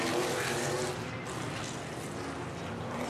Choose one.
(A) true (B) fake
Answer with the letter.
A